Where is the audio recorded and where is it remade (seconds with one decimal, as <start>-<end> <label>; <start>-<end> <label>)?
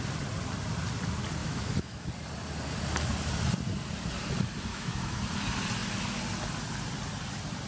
0.0-1.4 recorded; 1.4-2.1 remade; 2.1-4.7 recorded; 4.7-5.2 remade; 5.2-7.7 recorded